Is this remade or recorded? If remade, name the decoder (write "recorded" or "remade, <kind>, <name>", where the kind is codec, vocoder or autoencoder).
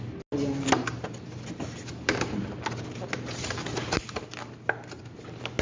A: recorded